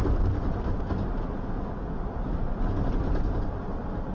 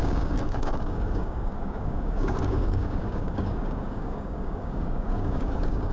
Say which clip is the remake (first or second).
second